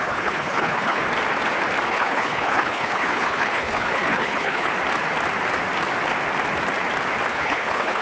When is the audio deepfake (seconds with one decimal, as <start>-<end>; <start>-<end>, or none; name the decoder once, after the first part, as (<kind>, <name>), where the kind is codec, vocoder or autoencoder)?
0.0-1.0 (codec, HILCodec); 1.9-4.7; 7.3-8.0